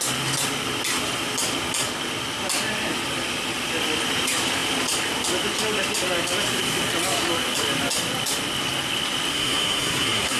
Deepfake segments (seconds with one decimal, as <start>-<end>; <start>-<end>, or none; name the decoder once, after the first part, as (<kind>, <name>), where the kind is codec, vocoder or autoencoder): 9.3-10.4 (codec, SNAC)